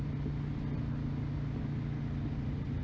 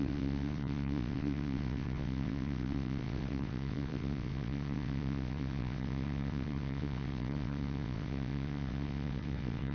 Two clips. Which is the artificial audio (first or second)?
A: second